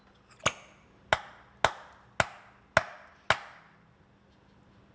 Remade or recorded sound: recorded